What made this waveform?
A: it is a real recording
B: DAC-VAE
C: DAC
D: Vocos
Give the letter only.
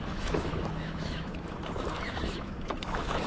B